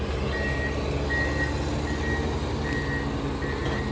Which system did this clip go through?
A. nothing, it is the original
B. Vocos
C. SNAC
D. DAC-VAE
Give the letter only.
A